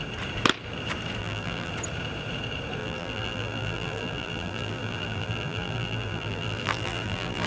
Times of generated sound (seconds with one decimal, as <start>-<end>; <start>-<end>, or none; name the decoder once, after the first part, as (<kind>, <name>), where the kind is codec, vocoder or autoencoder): 1.2-1.7 (vocoder, BigVGAN v2); 2.8-7.5